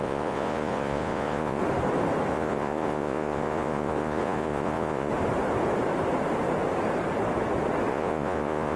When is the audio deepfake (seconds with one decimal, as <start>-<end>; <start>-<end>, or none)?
0.0-1.6; 2.3-5.1; 7.9-8.8